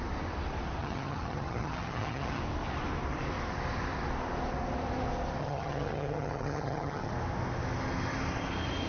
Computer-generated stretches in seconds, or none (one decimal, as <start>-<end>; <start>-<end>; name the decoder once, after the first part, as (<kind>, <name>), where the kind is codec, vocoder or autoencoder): 0.8-2.4 (vocoder, HiFi-GAN); 5.4-7.1